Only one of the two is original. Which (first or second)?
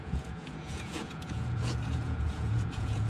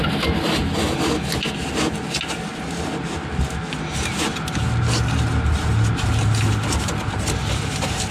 second